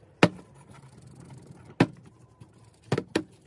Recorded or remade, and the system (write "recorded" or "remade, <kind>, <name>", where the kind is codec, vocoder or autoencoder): recorded